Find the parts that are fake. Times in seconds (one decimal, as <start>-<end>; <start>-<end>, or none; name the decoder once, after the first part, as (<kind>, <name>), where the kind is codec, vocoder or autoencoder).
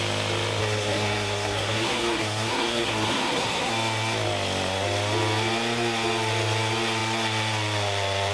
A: 0.6-3.7 (codec, SNAC)